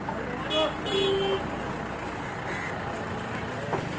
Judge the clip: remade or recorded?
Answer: recorded